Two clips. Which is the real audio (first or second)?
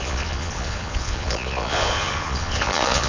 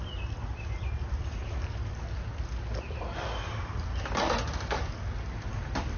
second